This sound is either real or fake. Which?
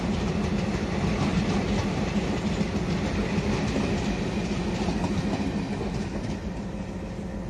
real